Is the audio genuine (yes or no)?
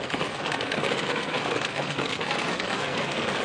no